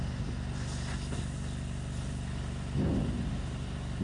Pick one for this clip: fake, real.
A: real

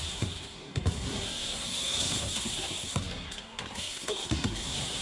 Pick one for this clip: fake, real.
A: fake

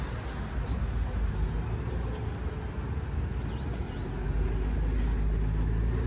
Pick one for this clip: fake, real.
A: real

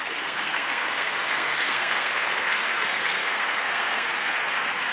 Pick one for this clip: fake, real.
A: fake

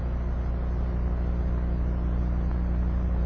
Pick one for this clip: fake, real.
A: real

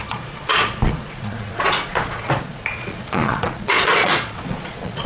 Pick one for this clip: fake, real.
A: fake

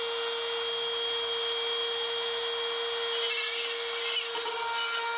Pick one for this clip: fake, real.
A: real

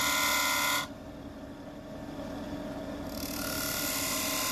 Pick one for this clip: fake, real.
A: real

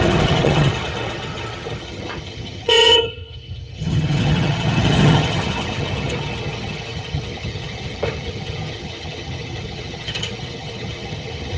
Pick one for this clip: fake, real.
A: fake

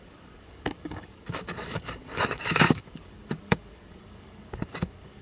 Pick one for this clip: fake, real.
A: fake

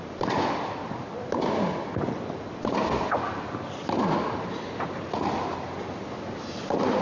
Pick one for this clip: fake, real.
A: real